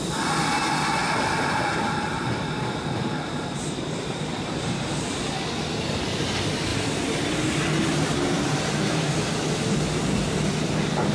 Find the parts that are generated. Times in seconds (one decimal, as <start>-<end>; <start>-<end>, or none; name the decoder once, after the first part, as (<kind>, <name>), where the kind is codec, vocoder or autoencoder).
1.0-5.2 (vocoder, BigVGAN v2); 6.7-9.1